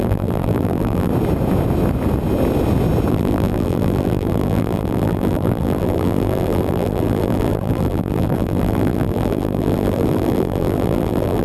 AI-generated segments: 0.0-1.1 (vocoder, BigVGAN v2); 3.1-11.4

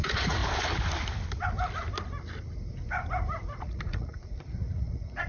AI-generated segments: 0.0-0.4 (vocoder, Vocos); 3.6-5.3

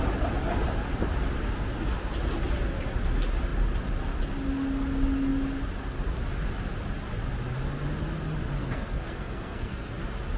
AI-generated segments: 8.6-9.9 (codec, SNAC)

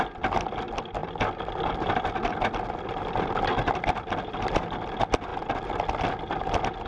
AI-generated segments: none

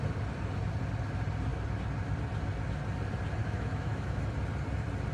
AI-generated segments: 3.4-4.2 (autoencoder, DAC-VAE)

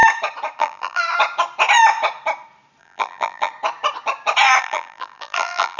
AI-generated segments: 0.6-1.0 (vocoder, BigVGAN v2); 2.8-3.5; 4.6-5.8

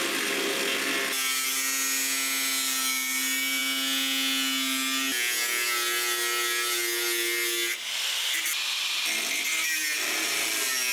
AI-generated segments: none

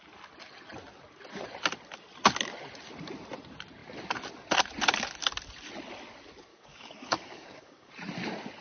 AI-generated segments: 6.5-7.9 (codec, DAC)